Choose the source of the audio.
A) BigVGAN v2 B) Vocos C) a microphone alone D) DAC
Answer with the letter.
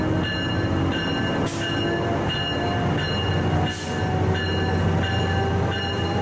C